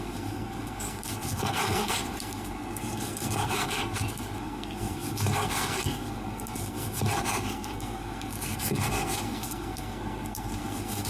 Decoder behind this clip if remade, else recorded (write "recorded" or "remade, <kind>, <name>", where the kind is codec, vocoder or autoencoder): remade, codec, SNAC